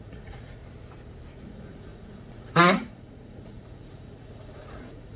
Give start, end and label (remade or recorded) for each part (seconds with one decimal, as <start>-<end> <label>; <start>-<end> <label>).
0.0-0.6 remade; 0.6-1.3 recorded; 1.3-5.2 remade